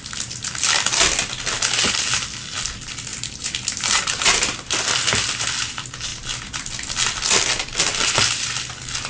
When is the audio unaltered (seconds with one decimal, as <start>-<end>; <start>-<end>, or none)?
0.0-3.1; 4.7-9.1